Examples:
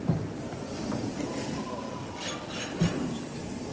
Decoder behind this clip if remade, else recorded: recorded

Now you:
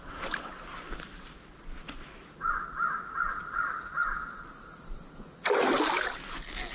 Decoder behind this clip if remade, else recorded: recorded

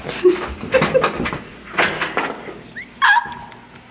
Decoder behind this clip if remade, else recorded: recorded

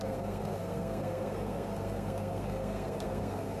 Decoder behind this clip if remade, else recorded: remade, codec, SNAC